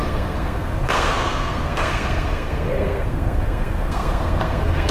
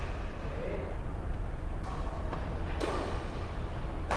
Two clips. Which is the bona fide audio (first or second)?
second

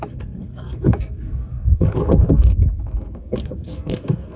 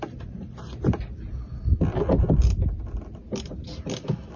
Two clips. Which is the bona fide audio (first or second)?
second